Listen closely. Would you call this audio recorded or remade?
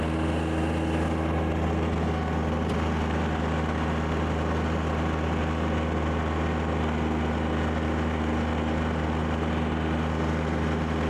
recorded